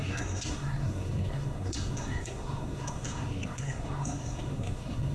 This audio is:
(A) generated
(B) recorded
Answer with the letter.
A